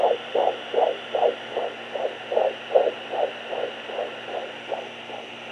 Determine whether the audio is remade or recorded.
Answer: recorded